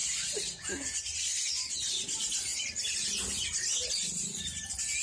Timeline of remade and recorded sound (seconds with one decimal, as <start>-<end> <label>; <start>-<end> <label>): 0.0-5.0 recorded